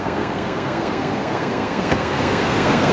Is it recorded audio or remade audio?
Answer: remade